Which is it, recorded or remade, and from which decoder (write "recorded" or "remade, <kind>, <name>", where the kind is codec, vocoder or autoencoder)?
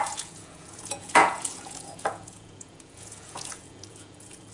remade, vocoder, Vocos